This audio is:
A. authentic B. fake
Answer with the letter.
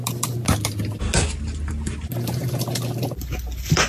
A